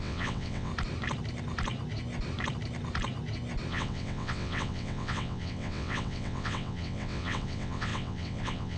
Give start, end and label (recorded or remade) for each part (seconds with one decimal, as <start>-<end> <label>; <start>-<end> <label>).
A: 0.0-0.7 remade; 0.7-3.7 recorded; 3.7-8.8 remade